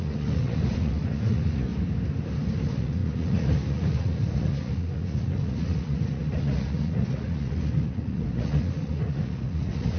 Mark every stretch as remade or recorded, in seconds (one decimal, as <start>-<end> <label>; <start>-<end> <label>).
0.0-1.7 remade; 1.7-2.6 recorded; 2.6-10.0 remade